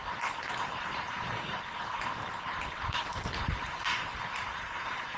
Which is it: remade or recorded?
recorded